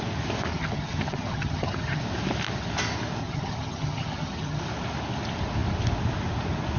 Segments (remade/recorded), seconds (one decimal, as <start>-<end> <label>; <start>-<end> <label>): 0.0-0.5 recorded; 0.5-2.0 remade; 2.0-3.2 recorded; 3.2-4.6 remade; 4.6-6.8 recorded